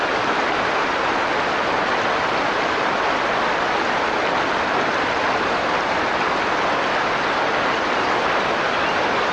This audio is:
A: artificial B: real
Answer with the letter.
B